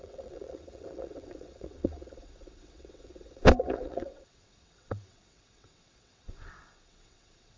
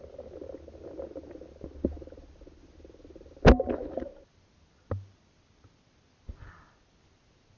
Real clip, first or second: second